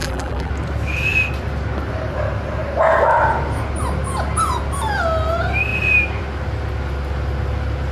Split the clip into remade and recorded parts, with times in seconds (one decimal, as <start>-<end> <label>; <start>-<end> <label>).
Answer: 0.0-0.5 remade; 0.5-7.9 recorded